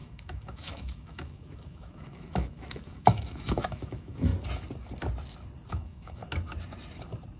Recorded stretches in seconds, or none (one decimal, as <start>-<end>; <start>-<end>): 4.3-5.7; 6.2-7.4